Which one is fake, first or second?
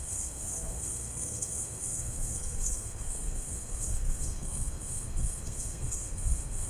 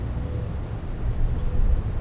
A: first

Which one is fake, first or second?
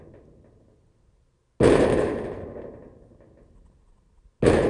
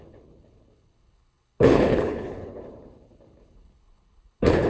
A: second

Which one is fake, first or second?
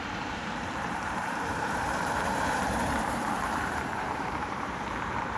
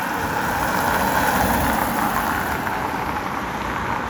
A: first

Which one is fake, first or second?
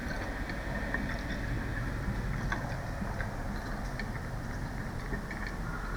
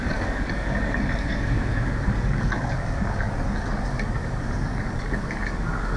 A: second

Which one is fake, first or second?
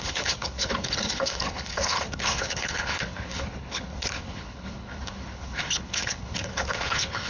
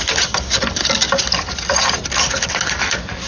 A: first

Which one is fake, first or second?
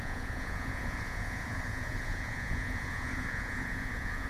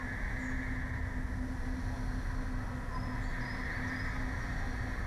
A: first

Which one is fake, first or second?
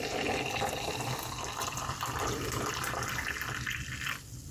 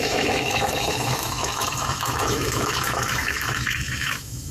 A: second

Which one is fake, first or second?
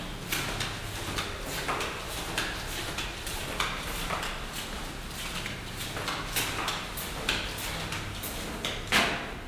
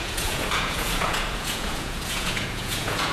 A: second